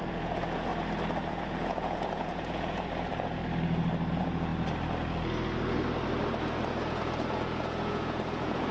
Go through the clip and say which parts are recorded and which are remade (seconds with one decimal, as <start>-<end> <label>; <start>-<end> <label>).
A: 0.0-0.7 remade; 0.7-1.3 recorded; 1.3-3.4 remade; 3.4-4.1 recorded; 4.1-4.5 remade; 4.5-6.8 recorded; 6.8-8.7 remade